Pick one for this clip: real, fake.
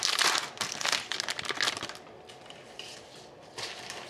real